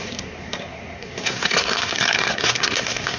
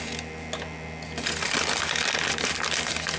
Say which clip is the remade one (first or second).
first